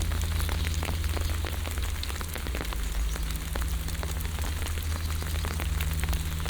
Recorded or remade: recorded